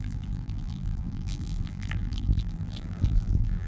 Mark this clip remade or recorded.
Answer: remade